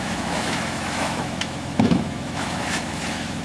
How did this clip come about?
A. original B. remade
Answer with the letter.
B